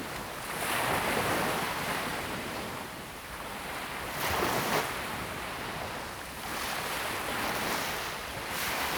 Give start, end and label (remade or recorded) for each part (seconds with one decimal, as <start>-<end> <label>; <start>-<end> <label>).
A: 0.0-2.1 recorded; 2.1-3.8 remade; 3.8-9.0 recorded